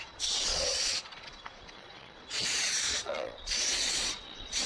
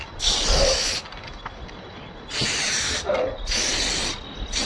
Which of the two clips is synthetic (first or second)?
first